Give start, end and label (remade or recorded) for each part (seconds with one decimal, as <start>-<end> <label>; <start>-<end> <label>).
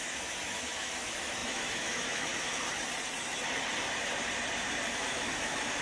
0.0-2.3 remade; 2.3-4.9 recorded; 4.9-5.8 remade